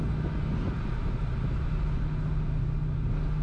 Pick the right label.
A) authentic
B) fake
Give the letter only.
A